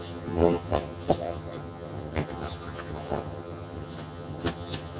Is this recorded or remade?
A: remade